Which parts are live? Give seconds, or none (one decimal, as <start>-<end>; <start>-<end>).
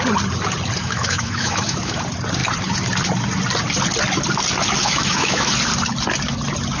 0.0-0.8; 2.0-4.8; 5.5-6.8